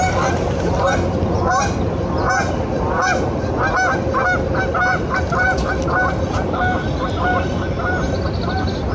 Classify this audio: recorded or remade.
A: recorded